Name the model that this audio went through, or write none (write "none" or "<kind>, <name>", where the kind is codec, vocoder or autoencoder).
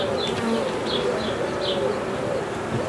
none